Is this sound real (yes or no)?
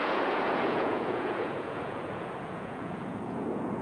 no